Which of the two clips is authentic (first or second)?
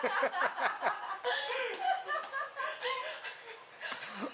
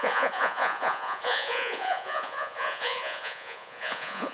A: first